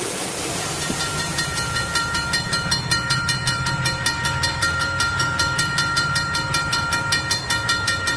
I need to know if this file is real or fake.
fake